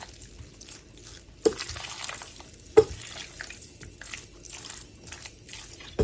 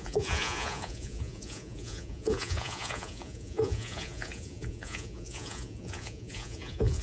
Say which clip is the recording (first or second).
first